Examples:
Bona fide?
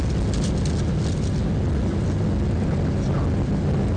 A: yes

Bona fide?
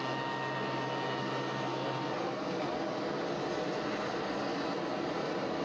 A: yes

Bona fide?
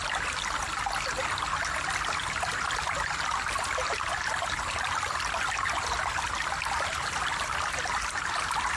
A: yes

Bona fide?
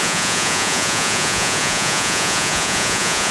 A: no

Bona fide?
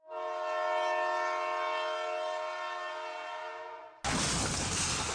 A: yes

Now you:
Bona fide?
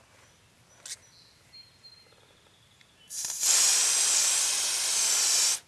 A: yes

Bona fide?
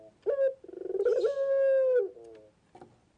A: yes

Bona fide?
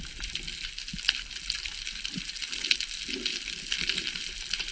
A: yes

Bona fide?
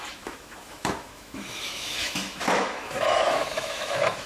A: no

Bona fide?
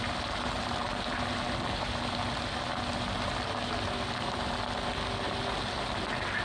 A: yes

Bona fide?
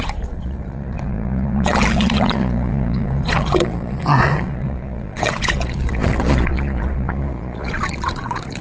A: no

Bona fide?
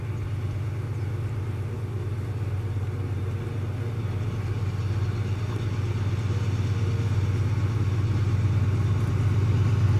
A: yes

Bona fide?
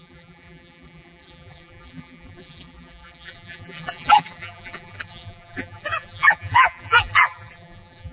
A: no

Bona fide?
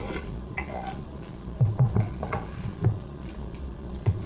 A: no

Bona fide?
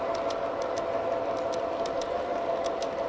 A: yes